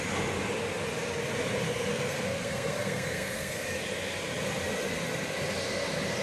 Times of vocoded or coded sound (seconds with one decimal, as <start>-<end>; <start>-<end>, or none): 1.9-3.6